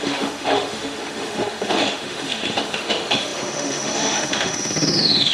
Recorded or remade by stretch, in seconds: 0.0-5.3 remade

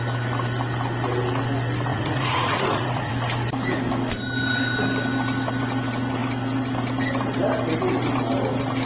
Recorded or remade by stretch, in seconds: 0.0-1.9 recorded; 1.9-3.1 remade; 3.1-8.9 recorded

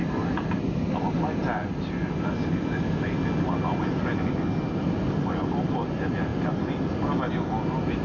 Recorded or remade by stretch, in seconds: 0.0-8.0 recorded

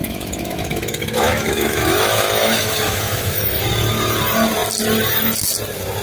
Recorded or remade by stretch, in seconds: 0.0-3.6 remade; 3.6-6.0 recorded

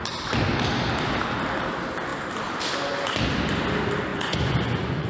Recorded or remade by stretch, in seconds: 0.0-4.1 recorded; 4.1-5.1 remade

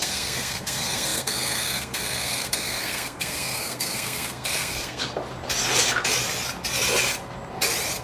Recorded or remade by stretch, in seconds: 0.0-5.2 remade; 5.2-8.0 recorded